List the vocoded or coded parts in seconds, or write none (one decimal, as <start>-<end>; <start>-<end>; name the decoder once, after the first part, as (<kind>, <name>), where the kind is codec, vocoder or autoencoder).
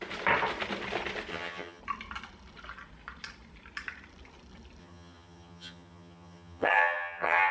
1.3-1.8 (vocoder, HiFi-GAN); 4.8-7.5